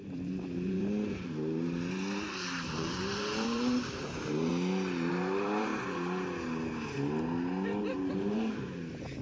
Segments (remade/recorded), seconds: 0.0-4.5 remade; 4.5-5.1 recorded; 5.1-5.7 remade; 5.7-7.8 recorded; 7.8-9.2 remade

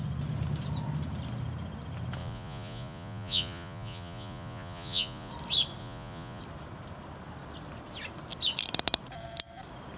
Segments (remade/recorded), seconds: 0.0-2.2 recorded; 2.2-5.3 remade; 5.3-5.8 recorded; 5.8-6.4 remade; 6.4-10.0 recorded

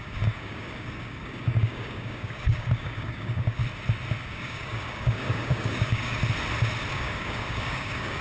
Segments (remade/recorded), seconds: 0.0-3.6 remade; 3.6-4.2 recorded; 4.2-6.2 remade; 6.2-6.9 recorded; 6.9-8.2 remade

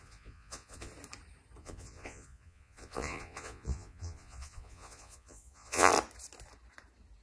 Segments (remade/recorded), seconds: 0.0-0.9 remade; 0.9-1.6 recorded; 1.6-5.9 remade; 5.9-7.2 recorded